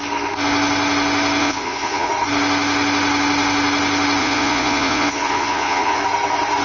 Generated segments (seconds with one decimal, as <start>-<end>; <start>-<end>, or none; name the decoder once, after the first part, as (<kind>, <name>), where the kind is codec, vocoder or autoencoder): 1.4-2.1 (vocoder, Vocos); 4.2-6.0